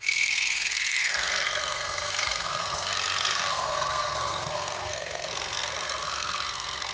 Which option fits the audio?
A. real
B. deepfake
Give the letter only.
B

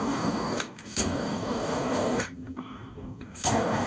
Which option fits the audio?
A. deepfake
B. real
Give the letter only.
A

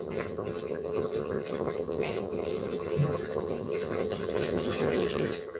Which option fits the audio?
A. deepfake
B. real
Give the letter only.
A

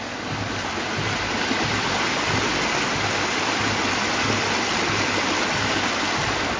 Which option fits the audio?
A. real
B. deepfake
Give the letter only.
A